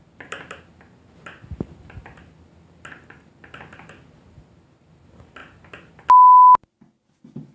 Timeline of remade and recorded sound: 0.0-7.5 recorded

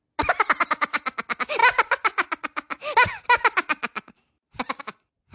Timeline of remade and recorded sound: 0.0-5.3 recorded

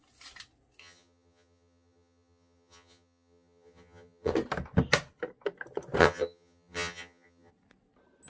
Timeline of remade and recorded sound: 0.0-0.8 recorded; 0.8-4.3 remade; 4.3-6.0 recorded; 6.0-7.5 remade; 7.5-8.3 recorded

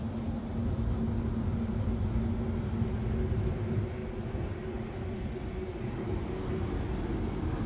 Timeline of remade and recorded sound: 0.0-7.7 recorded

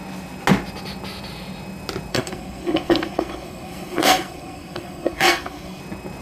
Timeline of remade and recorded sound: 0.0-2.1 recorded; 2.1-5.8 remade; 5.8-6.2 recorded